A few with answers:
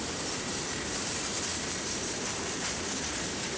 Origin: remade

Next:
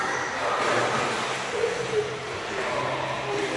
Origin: remade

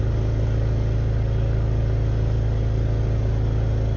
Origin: recorded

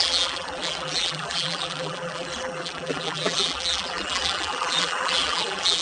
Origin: remade